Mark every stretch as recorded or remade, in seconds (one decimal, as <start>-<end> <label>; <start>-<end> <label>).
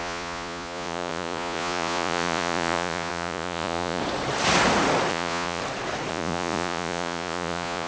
0.0-4.0 remade; 4.0-5.1 recorded; 5.1-5.6 remade; 5.6-6.1 recorded; 6.1-7.9 remade